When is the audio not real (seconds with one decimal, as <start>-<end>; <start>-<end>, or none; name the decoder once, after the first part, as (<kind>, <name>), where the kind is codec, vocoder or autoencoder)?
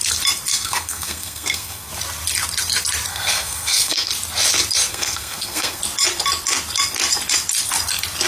0.5-1.9 (codec, SNAC); 3.1-4.1; 4.9-5.8